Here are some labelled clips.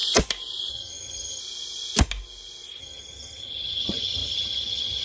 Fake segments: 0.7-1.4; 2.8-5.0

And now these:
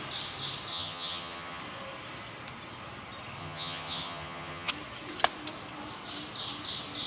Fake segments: 0.7-1.6; 3.4-4.7